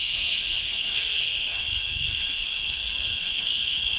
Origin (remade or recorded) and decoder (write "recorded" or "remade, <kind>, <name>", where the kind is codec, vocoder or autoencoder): remade, codec, SNAC